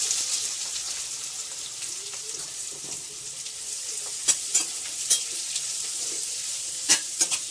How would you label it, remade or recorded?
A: remade